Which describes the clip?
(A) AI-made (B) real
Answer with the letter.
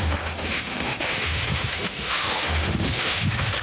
A